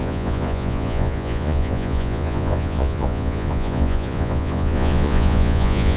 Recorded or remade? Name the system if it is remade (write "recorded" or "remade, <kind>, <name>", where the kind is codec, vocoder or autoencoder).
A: remade, vocoder, Vocos